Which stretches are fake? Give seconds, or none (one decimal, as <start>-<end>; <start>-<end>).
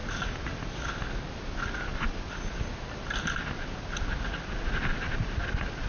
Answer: none